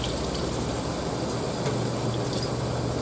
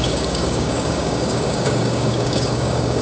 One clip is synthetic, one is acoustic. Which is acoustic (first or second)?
first